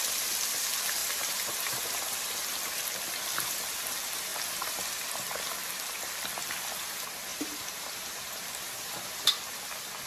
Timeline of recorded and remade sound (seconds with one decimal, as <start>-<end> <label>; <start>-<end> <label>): 0.0-1.0 recorded; 1.0-1.9 remade; 1.9-7.3 recorded; 7.3-9.3 remade; 9.3-10.1 recorded